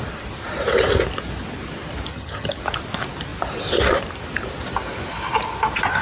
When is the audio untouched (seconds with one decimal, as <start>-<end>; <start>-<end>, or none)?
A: 0.0-2.1; 2.6-6.0